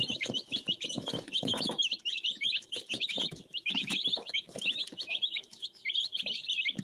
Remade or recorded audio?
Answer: remade